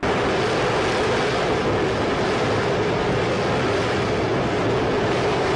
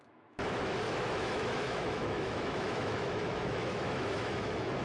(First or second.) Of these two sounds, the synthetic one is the second